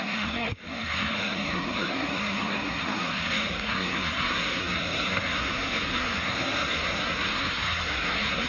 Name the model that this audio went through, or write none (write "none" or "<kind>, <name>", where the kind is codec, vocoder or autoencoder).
codec, SNAC